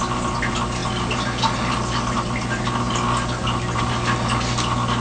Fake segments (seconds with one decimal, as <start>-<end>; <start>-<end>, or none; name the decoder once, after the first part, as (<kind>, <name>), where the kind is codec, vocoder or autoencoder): none